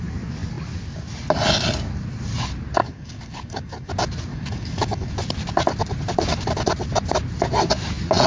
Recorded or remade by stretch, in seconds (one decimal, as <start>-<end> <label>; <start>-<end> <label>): 0.0-2.8 recorded; 2.8-3.9 remade; 3.9-4.3 recorded; 4.3-5.1 remade; 5.1-8.3 recorded